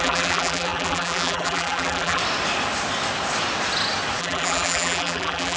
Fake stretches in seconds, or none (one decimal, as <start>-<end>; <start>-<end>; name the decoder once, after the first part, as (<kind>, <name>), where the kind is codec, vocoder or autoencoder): 0.0-2.2 (vocoder, BigVGAN v2); 4.2-5.6